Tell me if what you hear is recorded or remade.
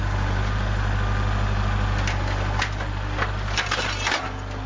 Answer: recorded